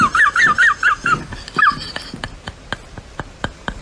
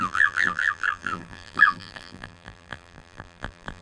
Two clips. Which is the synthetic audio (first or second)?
second